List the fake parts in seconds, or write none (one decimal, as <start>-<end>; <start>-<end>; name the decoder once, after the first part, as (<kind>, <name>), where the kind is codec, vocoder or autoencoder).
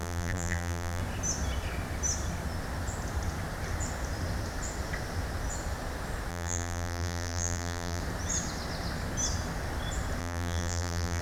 0.0-1.0 (vocoder, BigVGAN v2); 6.3-8.0; 10.2-11.2